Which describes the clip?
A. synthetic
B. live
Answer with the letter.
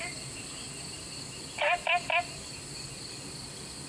B